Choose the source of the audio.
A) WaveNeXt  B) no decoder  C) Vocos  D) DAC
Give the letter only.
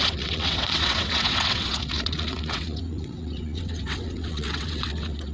A